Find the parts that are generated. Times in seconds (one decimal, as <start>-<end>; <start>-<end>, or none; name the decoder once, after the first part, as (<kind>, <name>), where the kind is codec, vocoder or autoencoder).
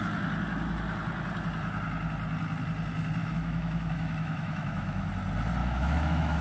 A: 3.2-5.1 (autoencoder, DAC-VAE); 5.6-6.4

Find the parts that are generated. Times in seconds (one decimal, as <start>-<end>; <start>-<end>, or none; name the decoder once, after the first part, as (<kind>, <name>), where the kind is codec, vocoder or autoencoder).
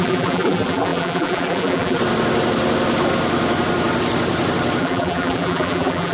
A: 0.0-2.0 (vocoder, BigVGAN v2); 4.8-6.1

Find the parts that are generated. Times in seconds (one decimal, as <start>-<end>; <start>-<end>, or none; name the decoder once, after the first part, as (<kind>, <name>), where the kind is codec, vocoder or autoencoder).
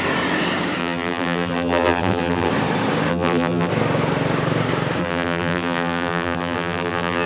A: 0.8-2.5 (vocoder, BigVGAN v2); 3.1-3.7; 5.0-7.3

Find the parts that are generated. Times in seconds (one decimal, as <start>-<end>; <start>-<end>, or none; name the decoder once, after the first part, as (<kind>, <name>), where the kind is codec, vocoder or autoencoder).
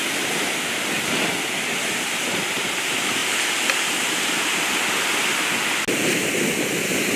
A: none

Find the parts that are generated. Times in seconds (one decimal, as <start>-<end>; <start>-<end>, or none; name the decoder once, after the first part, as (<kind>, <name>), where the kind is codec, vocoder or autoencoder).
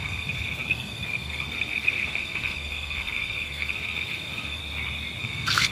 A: 0.0-4.6 (codec, SNAC); 5.2-5.7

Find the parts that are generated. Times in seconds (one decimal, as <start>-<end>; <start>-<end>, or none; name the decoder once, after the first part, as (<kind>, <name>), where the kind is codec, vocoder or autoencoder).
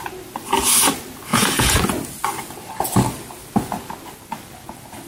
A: 1.3-1.8 (vocoder, Vocos)